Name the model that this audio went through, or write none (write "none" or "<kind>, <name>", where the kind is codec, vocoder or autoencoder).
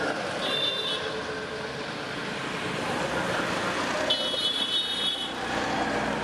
none